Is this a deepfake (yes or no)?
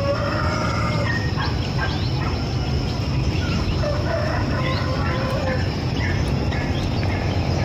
no